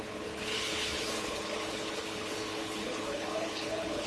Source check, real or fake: fake